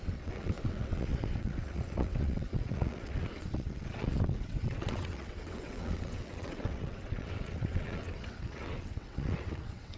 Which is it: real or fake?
fake